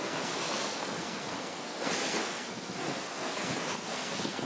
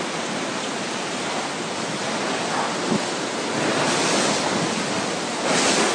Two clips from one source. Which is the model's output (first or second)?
first